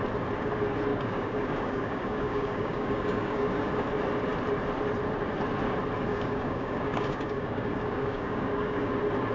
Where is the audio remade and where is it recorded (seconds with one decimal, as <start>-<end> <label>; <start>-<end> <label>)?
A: 0.0-0.9 recorded; 0.9-3.7 remade; 3.7-6.1 recorded; 6.1-8.9 remade; 8.9-9.3 recorded